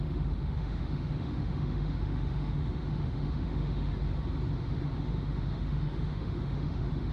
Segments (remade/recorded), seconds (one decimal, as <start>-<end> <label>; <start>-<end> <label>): 0.0-3.9 remade; 3.9-5.0 recorded; 5.0-7.1 remade